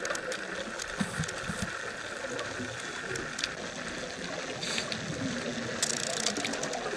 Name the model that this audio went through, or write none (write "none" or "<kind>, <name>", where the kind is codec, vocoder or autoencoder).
none